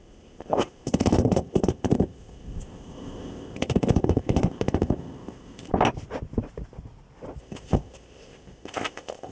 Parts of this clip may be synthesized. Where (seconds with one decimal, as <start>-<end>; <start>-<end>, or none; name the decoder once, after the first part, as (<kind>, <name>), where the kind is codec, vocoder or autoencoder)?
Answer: 0.0-5.7 (codec, ZipCodec); 7.4-9.3